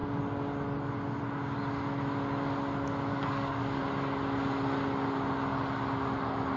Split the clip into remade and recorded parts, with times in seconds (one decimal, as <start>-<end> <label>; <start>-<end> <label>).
0.0-3.1 recorded; 3.1-3.8 remade; 3.8-6.6 recorded